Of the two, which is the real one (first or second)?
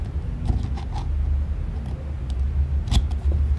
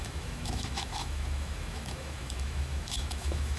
first